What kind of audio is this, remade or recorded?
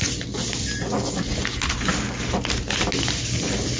recorded